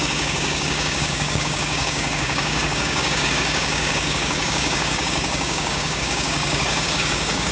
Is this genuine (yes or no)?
no